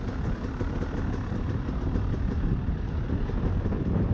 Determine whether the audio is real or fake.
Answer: real